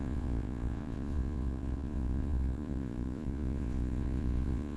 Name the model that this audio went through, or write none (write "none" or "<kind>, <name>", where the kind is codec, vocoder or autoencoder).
vocoder, Vocos